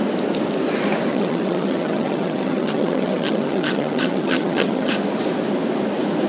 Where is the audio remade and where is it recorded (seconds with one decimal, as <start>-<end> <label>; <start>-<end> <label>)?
0.0-1.1 recorded; 1.1-4.9 remade; 4.9-6.3 recorded